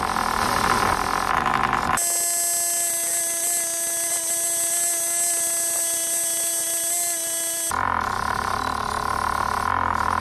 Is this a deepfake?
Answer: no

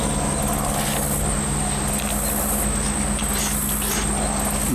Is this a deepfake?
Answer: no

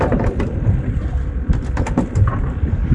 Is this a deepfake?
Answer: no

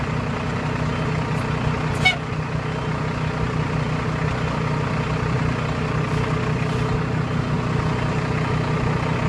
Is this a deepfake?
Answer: no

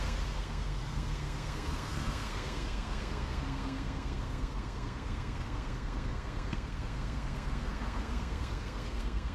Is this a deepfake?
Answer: yes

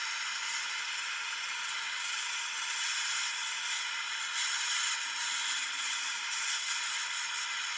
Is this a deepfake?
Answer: no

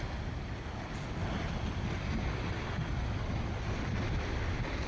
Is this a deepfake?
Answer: no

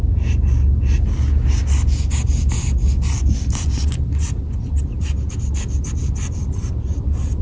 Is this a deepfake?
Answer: no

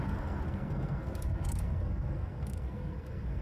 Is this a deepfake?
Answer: yes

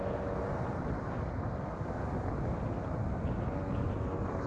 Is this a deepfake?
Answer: no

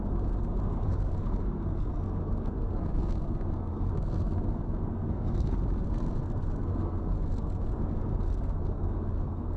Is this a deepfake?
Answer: yes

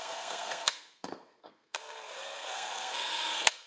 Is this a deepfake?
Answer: yes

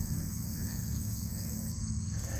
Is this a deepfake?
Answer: yes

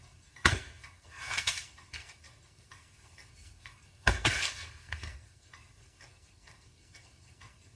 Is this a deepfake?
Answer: yes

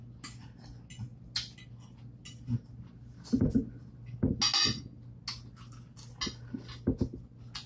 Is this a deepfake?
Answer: no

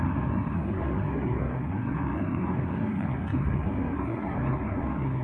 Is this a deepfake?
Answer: yes